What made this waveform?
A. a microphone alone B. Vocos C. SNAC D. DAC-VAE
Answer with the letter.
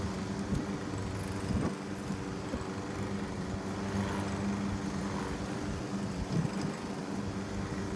A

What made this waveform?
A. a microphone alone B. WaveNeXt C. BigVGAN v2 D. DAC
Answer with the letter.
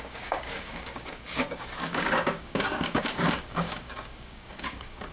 D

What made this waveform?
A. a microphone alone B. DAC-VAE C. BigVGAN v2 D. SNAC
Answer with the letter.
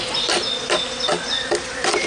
A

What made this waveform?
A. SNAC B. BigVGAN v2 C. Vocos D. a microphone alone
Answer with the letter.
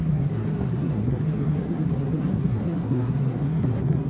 A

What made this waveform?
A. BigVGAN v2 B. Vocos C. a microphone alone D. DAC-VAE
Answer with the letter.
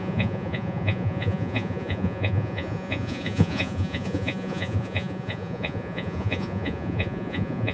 B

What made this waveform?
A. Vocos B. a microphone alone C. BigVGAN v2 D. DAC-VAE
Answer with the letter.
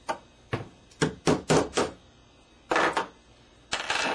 B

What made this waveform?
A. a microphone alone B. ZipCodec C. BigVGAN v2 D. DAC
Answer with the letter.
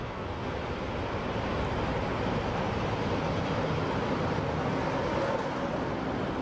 A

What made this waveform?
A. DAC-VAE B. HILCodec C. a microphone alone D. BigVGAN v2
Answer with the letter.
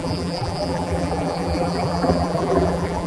D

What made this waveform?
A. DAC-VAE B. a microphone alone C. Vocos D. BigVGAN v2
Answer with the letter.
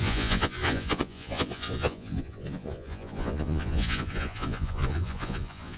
C